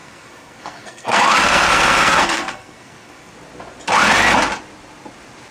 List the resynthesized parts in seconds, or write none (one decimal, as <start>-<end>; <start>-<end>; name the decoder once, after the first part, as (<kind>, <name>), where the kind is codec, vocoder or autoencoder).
0.0-3.3 (codec, SNAC)